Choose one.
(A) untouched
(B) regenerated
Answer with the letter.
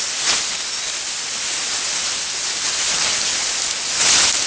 A